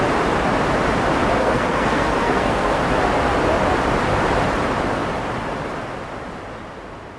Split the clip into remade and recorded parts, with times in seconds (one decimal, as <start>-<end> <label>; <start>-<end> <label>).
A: 0.0-1.4 recorded; 1.4-2.8 remade; 2.8-7.2 recorded